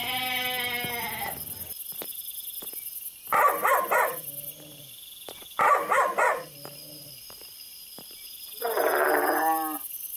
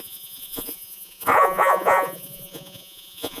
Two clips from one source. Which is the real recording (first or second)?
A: first